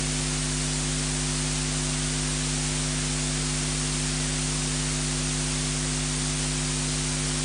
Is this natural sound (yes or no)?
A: yes